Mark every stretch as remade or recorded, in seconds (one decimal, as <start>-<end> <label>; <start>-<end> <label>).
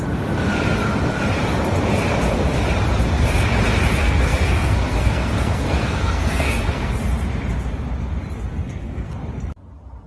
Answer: 0.0-4.0 recorded; 4.0-7.0 remade; 7.0-8.5 recorded; 8.5-9.1 remade; 9.1-10.1 recorded